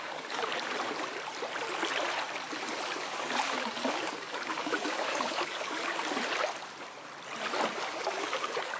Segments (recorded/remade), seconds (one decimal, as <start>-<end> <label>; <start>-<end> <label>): 0.0-0.5 remade; 0.5-3.0 recorded; 3.0-6.0 remade; 6.0-7.7 recorded; 7.7-8.8 remade